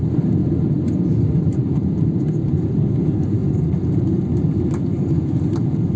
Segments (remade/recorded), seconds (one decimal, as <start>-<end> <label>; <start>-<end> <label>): 0.0-0.4 remade; 0.4-1.4 recorded; 1.4-3.4 remade; 3.4-5.0 recorded; 5.0-6.0 remade